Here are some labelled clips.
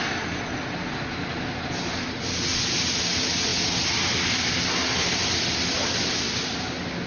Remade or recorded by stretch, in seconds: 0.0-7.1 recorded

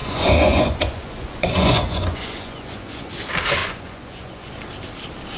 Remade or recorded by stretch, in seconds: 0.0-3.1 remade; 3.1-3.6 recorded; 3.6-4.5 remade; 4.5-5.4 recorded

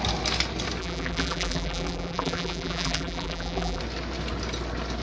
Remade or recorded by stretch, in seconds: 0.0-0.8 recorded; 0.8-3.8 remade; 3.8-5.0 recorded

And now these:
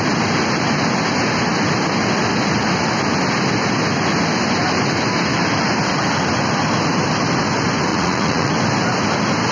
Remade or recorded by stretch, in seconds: 0.0-7.9 recorded; 7.9-8.5 remade; 8.5-9.5 recorded

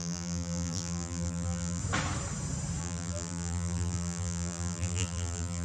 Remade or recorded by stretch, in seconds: 0.0-1.8 remade; 1.8-2.8 recorded; 2.8-5.6 remade

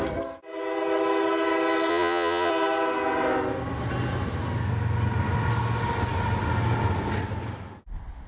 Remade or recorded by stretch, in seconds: 0.0-1.9 recorded; 1.9-2.5 remade; 2.5-8.3 recorded

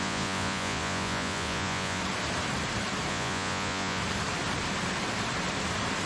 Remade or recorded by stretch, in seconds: 0.0-2.0 remade; 2.0-3.1 recorded; 3.1-4.0 remade; 4.0-6.1 recorded